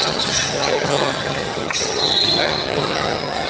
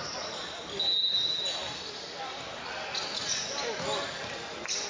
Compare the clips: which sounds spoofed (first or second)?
first